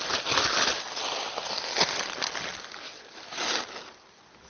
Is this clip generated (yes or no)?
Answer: no